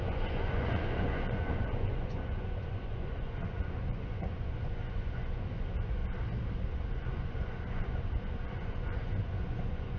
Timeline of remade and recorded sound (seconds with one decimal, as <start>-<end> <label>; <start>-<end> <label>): 0.0-6.0 remade; 6.0-6.7 recorded; 6.7-10.0 remade